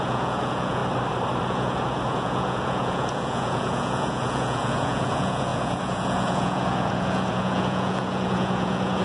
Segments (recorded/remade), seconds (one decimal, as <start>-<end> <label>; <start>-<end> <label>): 0.0-0.8 remade; 0.8-1.5 recorded; 1.5-9.0 remade